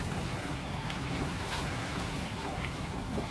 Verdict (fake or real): fake